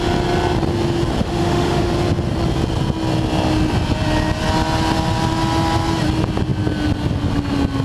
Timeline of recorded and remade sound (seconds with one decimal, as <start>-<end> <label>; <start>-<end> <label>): 0.0-1.2 recorded; 1.2-1.9 remade; 1.9-7.8 recorded